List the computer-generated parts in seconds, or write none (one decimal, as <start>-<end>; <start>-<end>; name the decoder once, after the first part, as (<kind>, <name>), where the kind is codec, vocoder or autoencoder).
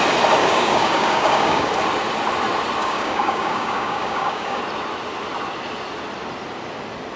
0.4-1.7 (codec, DAC); 2.8-4.6